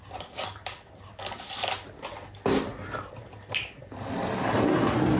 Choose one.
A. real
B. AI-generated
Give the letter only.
A